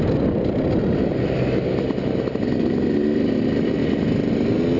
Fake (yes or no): no